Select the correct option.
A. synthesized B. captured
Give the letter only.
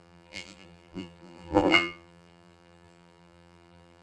A